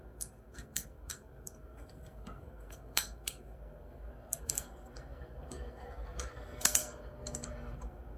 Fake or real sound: fake